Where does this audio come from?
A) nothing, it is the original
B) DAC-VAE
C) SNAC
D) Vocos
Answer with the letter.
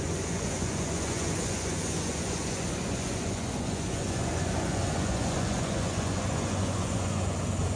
D